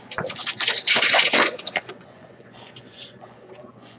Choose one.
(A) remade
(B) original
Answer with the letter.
A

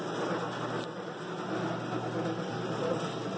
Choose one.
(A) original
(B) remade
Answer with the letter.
A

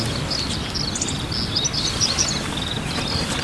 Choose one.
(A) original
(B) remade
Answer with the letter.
A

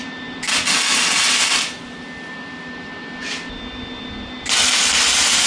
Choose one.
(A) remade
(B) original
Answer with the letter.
B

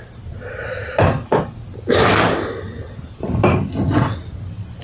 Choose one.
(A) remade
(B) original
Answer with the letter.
B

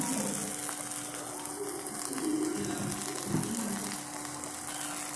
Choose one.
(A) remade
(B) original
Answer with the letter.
B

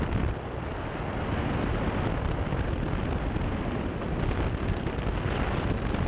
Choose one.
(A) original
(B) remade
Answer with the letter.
A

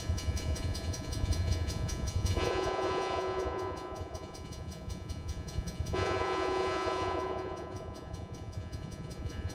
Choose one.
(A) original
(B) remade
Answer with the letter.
B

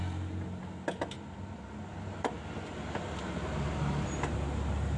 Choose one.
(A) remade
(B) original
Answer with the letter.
B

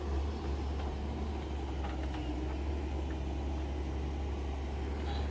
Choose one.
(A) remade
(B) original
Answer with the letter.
B